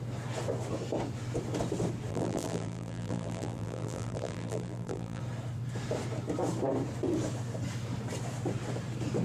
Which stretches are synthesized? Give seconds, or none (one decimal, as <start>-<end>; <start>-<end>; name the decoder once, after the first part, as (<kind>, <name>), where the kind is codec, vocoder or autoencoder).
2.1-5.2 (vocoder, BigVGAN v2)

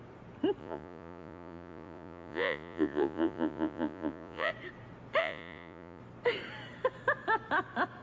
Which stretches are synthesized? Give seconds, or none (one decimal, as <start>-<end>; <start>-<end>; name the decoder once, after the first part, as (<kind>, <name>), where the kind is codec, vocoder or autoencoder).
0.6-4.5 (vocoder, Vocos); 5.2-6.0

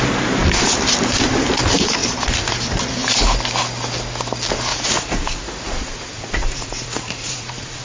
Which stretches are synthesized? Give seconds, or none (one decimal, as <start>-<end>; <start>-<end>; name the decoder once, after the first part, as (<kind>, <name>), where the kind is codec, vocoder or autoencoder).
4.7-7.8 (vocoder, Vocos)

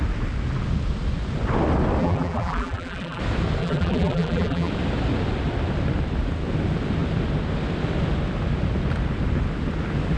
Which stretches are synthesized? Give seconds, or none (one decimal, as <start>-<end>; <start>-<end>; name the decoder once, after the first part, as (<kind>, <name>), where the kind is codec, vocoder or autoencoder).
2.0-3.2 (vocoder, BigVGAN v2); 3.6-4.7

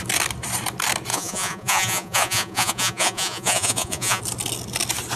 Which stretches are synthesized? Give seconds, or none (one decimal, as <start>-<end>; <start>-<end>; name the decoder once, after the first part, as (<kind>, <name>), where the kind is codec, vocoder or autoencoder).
1.1-4.2 (vocoder, Vocos)